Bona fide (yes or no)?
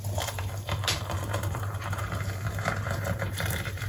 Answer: no